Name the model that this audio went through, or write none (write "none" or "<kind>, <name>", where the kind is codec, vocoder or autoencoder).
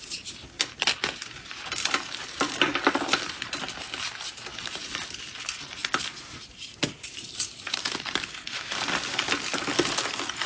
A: none